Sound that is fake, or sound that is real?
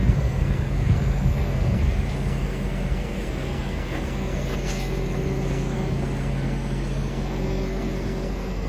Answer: fake